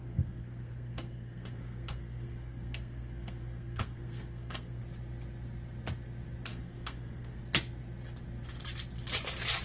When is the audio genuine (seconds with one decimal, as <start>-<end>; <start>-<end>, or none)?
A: 4.8-6.5; 7.4-9.6